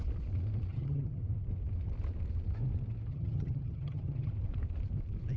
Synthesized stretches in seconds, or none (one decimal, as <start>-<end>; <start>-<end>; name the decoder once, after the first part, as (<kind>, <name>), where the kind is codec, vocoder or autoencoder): 0.7-1.2 (vocoder, HiFi-GAN); 3.1-4.3